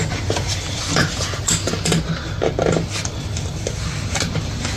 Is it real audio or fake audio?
real